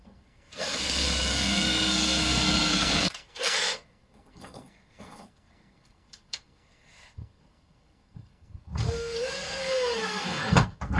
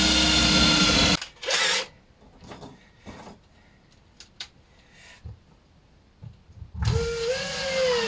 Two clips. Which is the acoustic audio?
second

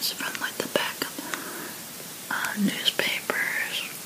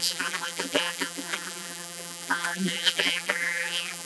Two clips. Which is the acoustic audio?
first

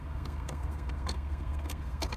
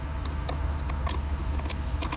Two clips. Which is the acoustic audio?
second